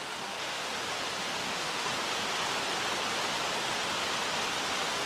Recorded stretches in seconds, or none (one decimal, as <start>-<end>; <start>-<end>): 0.6-1.4; 1.9-5.1